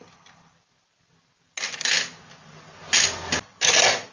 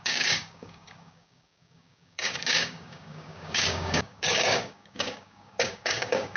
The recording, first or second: first